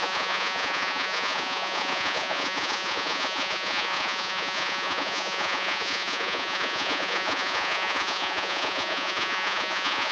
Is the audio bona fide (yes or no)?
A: no